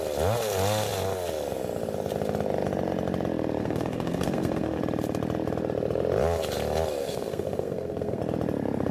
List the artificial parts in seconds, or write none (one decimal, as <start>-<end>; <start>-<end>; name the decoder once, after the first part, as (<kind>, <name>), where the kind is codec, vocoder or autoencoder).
3.6-4.8 (codec, SNAC); 7.0-8.2